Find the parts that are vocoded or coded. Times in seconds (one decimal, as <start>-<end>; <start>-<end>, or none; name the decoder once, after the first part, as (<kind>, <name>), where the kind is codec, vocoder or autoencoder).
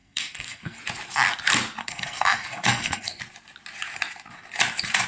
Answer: 0.0-0.8 (codec, SNAC); 1.8-3.2